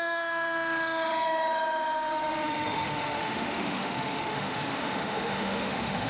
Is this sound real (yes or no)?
no